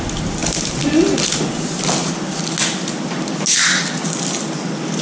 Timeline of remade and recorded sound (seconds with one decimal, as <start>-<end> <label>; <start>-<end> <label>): 0.0-5.0 recorded